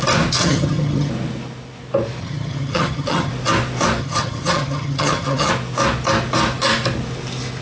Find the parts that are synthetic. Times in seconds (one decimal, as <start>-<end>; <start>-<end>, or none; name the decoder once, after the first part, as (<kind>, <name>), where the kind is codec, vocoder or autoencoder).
0.4-1.1 (vocoder, HiFi-GAN); 2.2-3.3; 4.0-5.5